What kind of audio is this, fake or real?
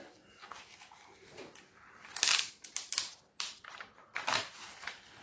real